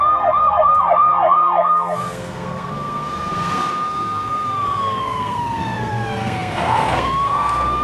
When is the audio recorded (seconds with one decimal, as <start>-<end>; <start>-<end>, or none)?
none